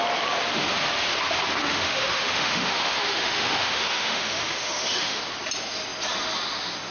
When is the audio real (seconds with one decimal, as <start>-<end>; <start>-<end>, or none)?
0.0-1.6; 5.2-6.9